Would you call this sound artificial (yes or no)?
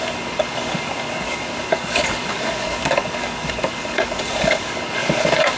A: yes